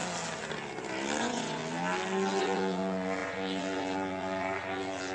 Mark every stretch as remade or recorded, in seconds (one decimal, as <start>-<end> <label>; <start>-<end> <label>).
0.0-1.2 recorded; 1.2-1.6 remade; 1.6-2.4 recorded; 2.4-5.1 remade